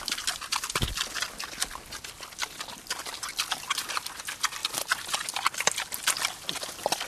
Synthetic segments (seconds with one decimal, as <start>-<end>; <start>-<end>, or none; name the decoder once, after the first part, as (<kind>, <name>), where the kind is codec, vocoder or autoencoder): none

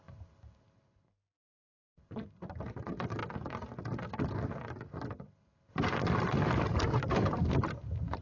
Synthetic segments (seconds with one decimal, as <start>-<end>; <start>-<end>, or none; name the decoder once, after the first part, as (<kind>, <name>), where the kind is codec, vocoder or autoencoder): none

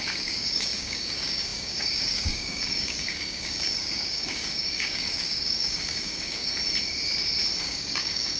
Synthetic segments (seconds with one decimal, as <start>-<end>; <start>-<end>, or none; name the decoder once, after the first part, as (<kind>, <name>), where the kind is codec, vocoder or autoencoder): 0.0-6.5 (codec, DAC); 7.6-8.4

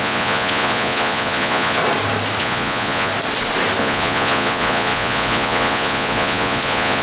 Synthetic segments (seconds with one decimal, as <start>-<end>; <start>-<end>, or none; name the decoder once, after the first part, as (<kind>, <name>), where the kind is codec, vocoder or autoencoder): 0.0-1.8 (vocoder, Vocos); 2.4-3.1; 3.8-7.0

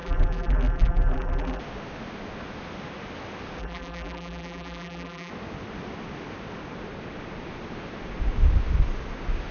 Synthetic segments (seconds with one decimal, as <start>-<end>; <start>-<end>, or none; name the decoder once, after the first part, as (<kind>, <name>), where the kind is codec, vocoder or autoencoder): 0.0-1.6 (vocoder, BigVGAN v2); 3.6-5.3

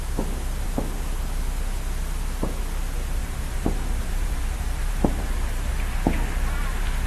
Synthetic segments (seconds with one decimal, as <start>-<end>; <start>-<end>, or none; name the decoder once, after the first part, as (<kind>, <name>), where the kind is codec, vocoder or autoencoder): 3.2-5.7 (vocoder, BigVGAN v2)